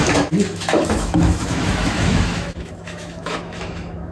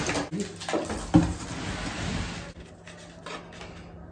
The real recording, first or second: second